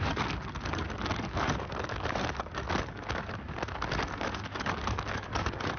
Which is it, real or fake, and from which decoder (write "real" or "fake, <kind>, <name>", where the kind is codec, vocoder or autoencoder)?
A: fake, codec, DAC